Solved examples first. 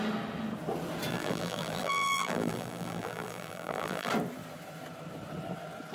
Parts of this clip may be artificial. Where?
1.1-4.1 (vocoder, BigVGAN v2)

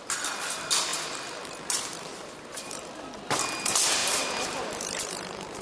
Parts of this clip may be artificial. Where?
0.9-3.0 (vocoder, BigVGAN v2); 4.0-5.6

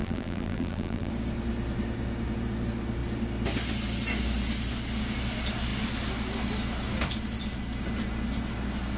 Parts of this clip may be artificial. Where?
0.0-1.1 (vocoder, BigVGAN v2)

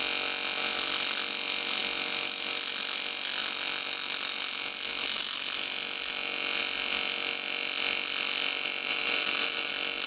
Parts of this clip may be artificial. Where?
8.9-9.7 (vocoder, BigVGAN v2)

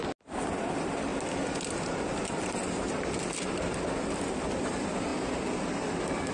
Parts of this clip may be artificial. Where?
0.7-1.1 (vocoder, BigVGAN v2); 2.0-5.1

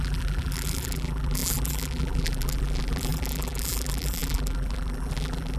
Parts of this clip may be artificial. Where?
0.0-5.6 (vocoder, BigVGAN v2)